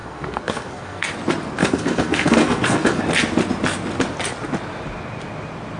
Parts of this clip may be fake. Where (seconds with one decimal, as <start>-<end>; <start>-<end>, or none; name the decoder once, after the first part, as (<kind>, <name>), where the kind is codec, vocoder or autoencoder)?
0.0-1.1 (codec, SNAC); 1.6-3.0